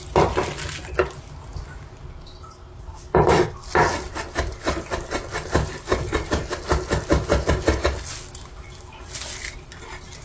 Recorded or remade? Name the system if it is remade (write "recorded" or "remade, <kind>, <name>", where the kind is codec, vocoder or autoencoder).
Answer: recorded